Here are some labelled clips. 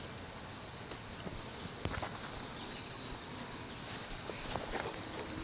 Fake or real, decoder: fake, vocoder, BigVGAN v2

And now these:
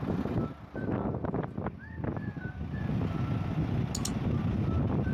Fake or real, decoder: real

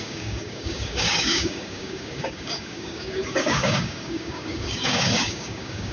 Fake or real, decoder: fake, codec, DAC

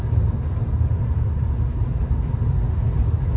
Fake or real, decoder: real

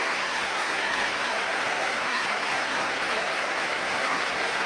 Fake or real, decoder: fake, codec, SNAC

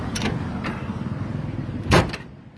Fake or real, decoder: fake, vocoder, BigVGAN v2